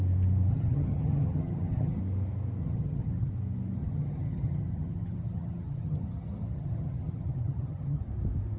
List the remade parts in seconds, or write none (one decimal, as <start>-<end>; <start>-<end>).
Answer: 0.5-2.0; 2.6-3.3; 3.8-8.0